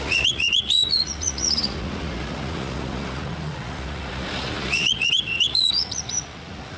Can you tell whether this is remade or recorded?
remade